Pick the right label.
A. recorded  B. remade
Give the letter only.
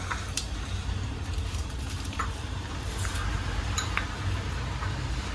B